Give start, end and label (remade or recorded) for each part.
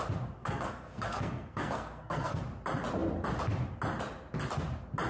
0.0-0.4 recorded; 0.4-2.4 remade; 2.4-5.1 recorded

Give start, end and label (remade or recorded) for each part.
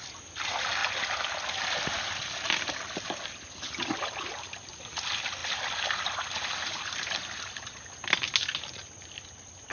0.0-9.7 recorded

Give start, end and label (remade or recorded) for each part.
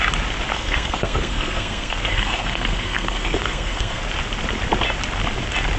0.0-0.5 recorded; 0.5-4.0 remade; 4.0-5.8 recorded